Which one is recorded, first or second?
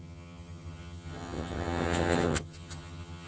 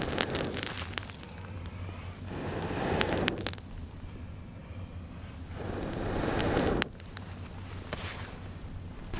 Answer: second